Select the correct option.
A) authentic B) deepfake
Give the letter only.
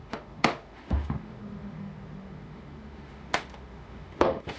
B